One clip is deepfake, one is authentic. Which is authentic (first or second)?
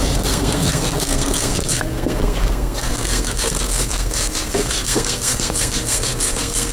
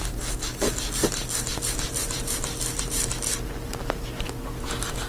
second